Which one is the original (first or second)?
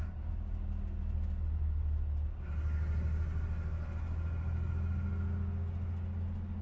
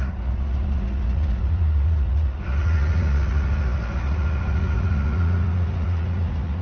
first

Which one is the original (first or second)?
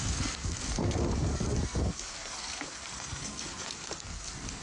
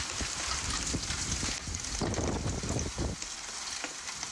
second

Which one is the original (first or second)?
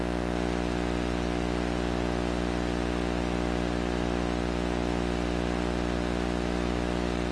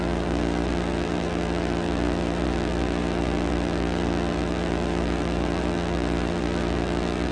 first